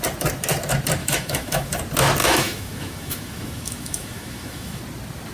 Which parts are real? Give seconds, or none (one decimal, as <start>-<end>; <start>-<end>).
0.0-1.0; 1.7-2.2; 4.8-5.3